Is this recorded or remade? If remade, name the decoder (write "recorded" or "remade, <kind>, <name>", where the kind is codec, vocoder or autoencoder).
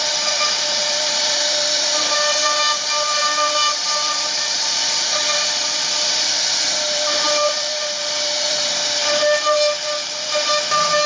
remade, vocoder, BigVGAN v2